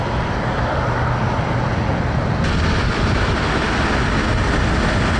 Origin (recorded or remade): recorded